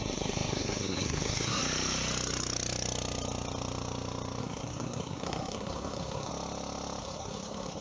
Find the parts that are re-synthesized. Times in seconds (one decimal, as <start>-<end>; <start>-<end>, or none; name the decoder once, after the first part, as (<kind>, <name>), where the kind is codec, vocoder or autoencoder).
0.0-1.6 (codec, SNAC); 4.4-6.3; 7.0-7.8